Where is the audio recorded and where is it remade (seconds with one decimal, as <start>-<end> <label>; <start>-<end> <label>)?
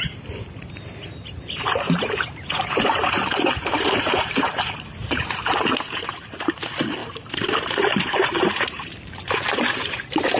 0.0-10.4 remade